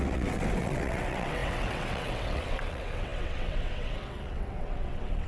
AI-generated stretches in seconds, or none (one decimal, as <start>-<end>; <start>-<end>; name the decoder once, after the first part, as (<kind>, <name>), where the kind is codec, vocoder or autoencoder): 0.0-5.3 (vocoder, WaveNeXt)